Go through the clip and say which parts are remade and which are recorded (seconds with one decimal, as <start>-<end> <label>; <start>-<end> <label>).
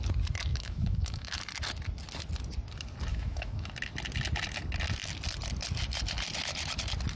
0.0-0.5 recorded; 0.5-1.4 remade; 1.4-3.1 recorded; 3.1-3.7 remade; 3.7-7.2 recorded